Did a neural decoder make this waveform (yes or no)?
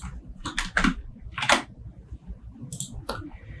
no